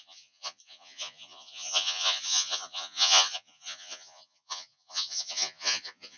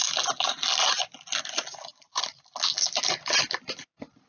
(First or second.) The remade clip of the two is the first